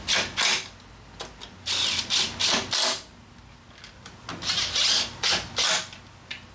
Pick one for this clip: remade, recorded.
recorded